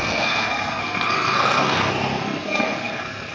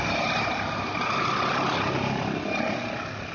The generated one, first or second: first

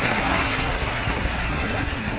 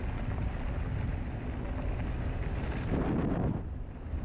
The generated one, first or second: first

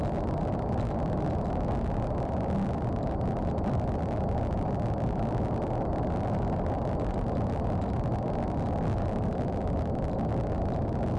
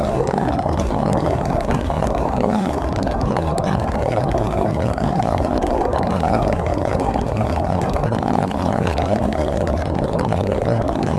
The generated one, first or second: second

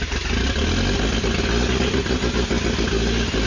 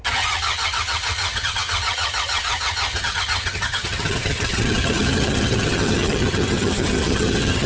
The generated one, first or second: second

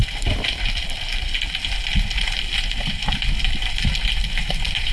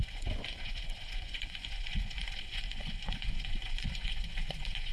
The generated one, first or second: second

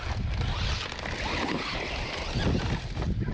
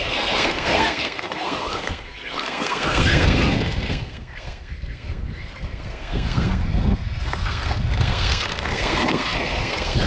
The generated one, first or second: second